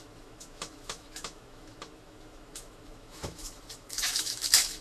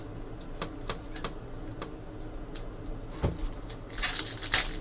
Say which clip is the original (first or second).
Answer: second